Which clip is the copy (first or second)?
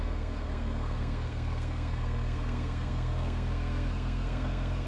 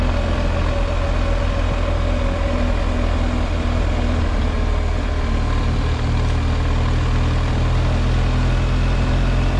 first